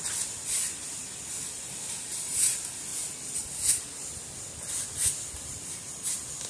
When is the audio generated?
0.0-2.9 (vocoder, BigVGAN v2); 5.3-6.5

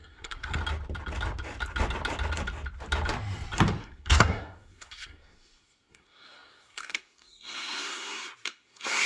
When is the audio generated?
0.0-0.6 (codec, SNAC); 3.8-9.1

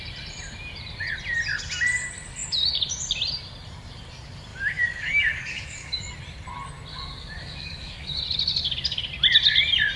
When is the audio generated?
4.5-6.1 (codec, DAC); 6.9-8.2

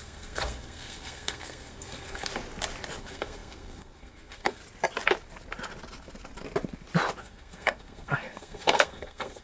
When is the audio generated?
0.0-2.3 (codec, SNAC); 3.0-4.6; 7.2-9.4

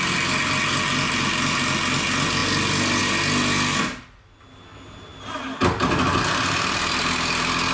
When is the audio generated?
none

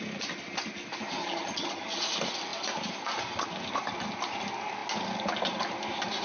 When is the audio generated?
1.2-2.0 (vocoder, HiFi-GAN)

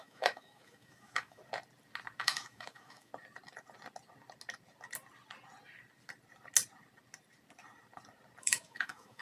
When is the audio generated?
0.0-1.4 (autoencoder, DAC-VAE); 2.2-3.1; 8.4-9.2